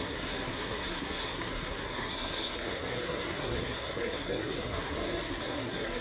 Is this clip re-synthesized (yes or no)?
yes